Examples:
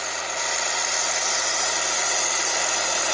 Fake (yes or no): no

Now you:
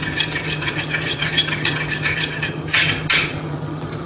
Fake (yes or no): yes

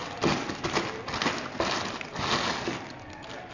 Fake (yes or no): no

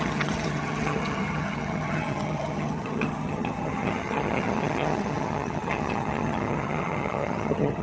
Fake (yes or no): yes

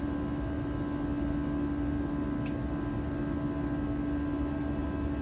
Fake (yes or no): no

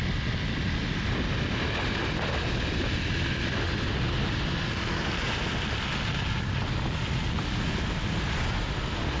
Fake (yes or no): no